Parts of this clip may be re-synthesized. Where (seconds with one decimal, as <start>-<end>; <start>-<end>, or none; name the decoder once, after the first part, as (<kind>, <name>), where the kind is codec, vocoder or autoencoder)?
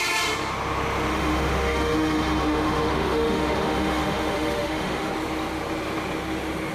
1.1-5.1 (autoencoder, DAC-VAE)